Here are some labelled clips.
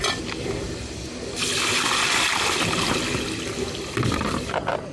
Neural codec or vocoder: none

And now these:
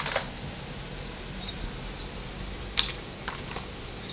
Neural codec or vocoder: none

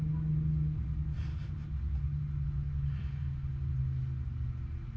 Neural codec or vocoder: none